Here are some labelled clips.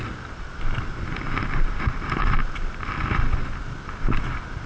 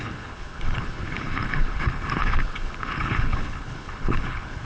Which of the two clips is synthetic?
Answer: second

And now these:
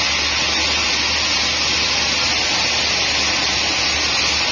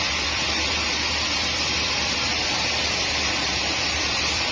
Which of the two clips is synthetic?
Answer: second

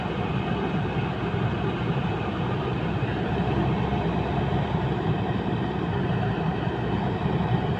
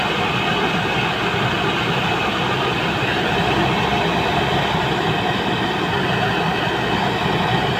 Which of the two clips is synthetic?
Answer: first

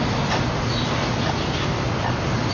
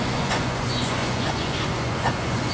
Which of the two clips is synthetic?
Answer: second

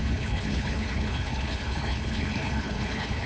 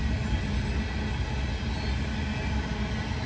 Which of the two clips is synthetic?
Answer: first